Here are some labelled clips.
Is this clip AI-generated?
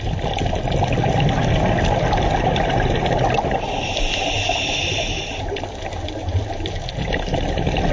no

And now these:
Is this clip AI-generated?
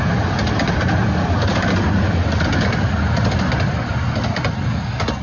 no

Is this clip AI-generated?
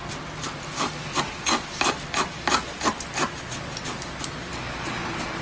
no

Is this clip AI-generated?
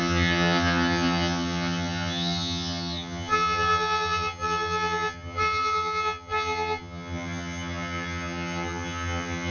yes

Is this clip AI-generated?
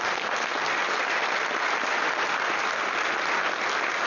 no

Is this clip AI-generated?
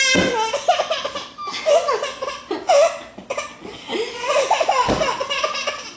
no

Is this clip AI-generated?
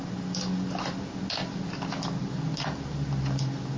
no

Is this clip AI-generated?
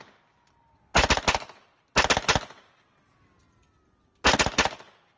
no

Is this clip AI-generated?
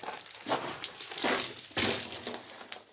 no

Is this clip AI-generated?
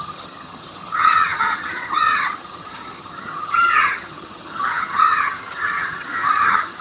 yes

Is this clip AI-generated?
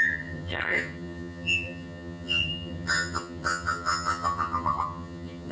yes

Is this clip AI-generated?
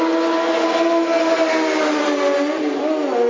no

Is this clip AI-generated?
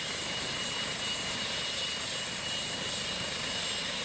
no